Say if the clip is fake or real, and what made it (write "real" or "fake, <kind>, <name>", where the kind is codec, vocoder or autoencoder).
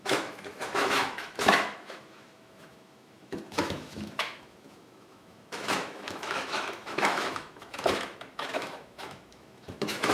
fake, autoencoder, DAC-VAE